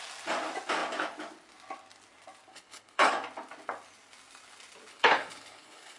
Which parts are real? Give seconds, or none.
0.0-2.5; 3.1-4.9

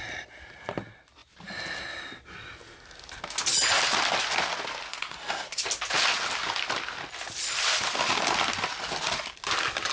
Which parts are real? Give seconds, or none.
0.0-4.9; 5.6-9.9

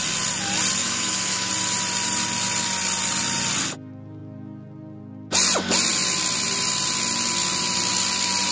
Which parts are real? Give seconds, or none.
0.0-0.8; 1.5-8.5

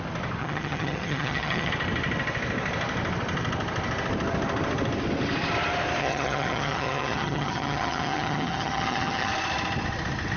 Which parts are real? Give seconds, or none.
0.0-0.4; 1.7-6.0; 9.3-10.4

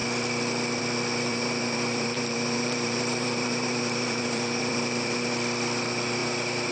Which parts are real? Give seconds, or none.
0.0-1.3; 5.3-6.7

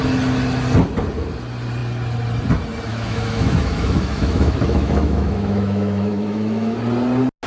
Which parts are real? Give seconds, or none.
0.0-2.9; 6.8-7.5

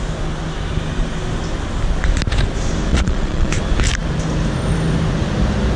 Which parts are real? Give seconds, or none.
0.0-2.9; 3.5-5.8

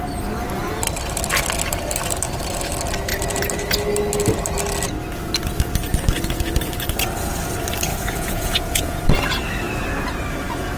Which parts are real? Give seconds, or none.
0.0-7.9; 9.0-10.8